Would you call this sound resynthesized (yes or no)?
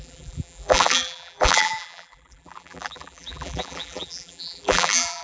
yes